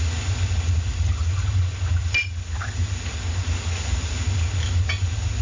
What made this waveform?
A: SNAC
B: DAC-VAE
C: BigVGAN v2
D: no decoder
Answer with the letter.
D